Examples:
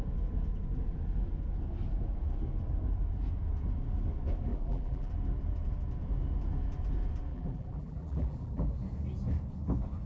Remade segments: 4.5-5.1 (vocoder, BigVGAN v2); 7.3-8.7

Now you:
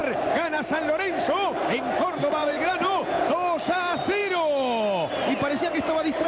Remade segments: 2.4-3.3 (vocoder, Vocos)